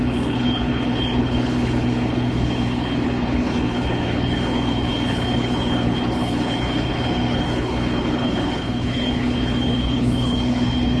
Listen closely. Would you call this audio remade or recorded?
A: remade